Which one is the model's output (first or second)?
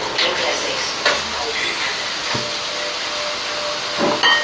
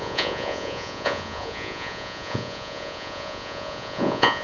second